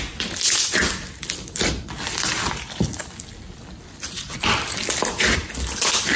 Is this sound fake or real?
real